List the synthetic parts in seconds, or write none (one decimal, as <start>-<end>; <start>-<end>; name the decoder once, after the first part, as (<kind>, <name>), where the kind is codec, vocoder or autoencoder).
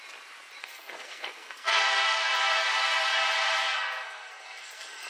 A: 0.6-2.3 (codec, SNAC); 3.6-5.1